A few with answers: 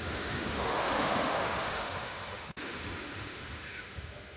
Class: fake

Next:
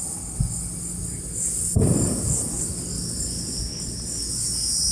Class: real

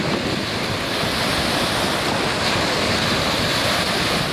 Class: real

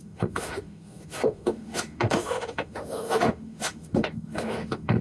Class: fake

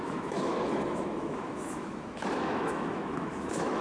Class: fake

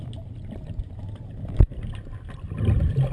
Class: real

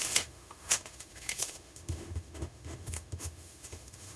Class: fake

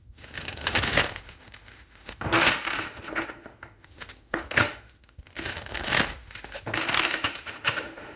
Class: fake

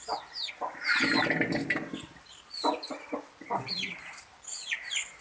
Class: real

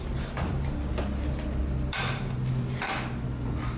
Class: real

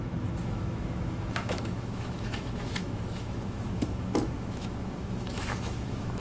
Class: fake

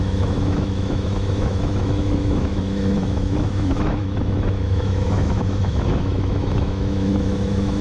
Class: fake